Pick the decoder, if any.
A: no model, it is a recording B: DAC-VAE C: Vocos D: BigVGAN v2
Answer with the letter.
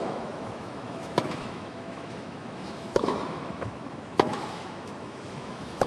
B